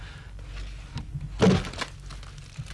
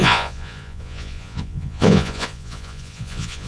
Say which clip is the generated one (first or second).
second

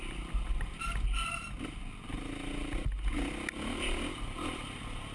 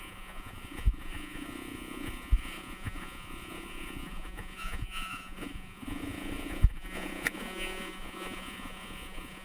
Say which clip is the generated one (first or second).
second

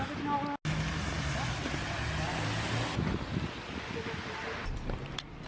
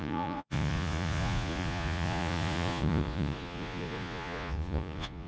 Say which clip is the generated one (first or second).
second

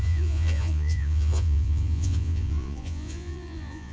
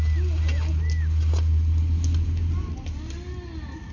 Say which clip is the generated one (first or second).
first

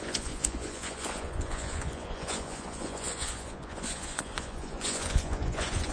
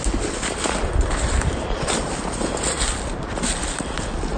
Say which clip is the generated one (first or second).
first